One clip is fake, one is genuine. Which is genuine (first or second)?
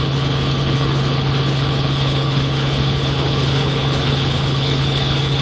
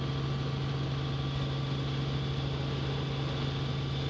second